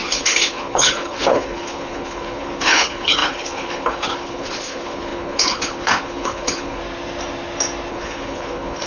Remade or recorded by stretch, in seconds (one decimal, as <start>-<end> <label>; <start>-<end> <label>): 0.0-6.8 remade; 6.8-7.9 recorded; 7.9-8.9 remade